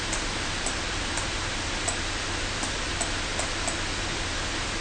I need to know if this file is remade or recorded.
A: recorded